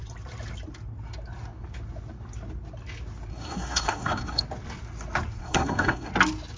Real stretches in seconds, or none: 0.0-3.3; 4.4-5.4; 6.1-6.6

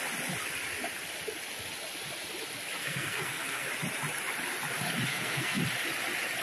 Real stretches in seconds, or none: 0.0-2.8; 3.7-5.1; 5.6-6.4

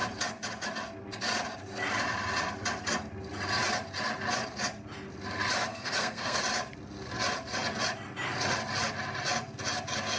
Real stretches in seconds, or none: 0.0-5.7; 6.4-10.2